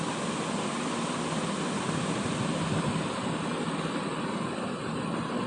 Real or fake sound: real